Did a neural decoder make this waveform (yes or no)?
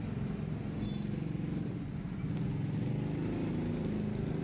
no